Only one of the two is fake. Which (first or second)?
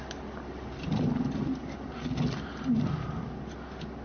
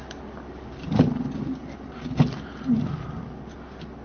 first